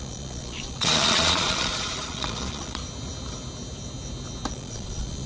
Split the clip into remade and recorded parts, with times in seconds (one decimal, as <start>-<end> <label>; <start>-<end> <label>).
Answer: 0.0-2.8 remade; 2.8-4.5 recorded; 4.5-5.3 remade